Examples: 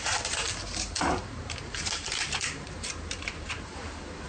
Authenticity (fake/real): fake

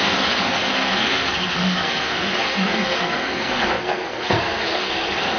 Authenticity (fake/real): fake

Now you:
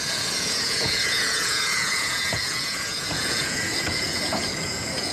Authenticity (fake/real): fake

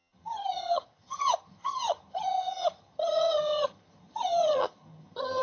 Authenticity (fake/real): fake